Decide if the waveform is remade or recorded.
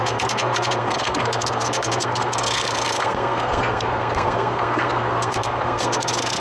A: remade